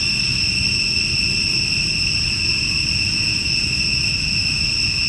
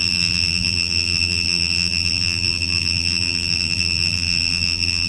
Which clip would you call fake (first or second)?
second